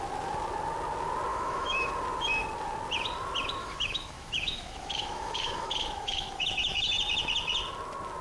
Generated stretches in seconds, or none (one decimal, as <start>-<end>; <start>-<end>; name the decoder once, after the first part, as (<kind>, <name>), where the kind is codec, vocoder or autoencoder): 1.3-1.9 (autoencoder, DAC-VAE); 3.6-6.9